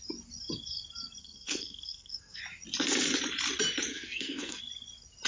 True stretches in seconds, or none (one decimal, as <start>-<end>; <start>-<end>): 0.0-1.2; 2.4-3.9; 4.6-5.3